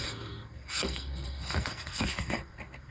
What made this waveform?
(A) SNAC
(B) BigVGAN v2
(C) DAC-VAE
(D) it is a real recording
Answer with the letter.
A